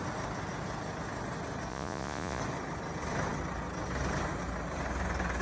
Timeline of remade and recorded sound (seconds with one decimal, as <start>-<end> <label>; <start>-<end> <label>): 0.0-1.7 recorded; 1.7-2.4 remade; 2.4-5.4 recorded